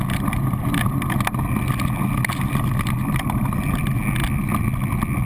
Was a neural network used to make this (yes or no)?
no